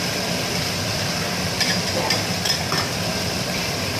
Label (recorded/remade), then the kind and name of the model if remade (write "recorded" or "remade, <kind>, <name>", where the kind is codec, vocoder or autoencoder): recorded